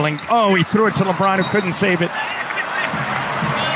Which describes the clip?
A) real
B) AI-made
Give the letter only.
A